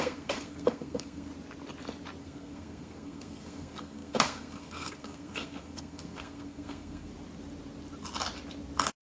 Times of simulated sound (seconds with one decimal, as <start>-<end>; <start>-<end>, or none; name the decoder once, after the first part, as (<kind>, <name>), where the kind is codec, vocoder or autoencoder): 0.0-1.3 (codec, SNAC); 2.2-7.1